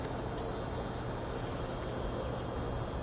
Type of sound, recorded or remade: recorded